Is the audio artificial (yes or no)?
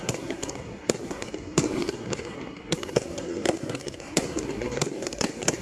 yes